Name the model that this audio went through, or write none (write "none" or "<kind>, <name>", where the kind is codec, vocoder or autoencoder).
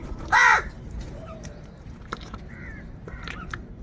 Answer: vocoder, BigVGAN v2